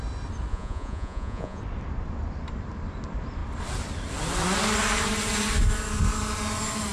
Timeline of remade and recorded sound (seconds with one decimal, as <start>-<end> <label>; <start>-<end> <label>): 0.0-0.5 recorded; 0.5-1.6 remade; 1.6-6.9 recorded